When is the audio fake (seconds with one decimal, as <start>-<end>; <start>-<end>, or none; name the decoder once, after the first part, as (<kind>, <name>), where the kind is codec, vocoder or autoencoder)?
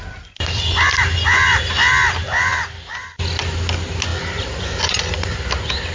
2.5-3.1 (vocoder, BigVGAN v2); 4.1-5.4